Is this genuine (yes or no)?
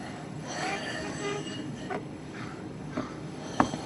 no